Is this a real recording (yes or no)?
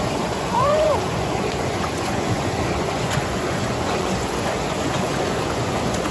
no